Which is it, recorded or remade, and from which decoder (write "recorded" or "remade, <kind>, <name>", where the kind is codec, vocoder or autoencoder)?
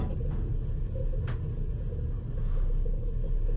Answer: recorded